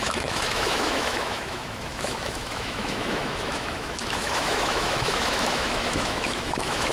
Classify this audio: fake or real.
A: fake